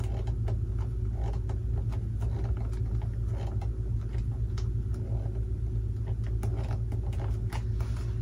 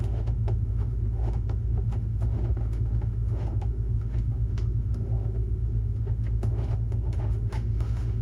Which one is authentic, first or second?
first